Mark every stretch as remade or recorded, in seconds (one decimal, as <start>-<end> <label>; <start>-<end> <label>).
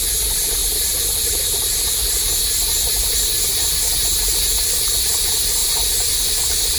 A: 0.0-0.6 recorded; 0.6-2.2 remade; 2.2-3.5 recorded; 3.5-5.1 remade; 5.1-6.8 recorded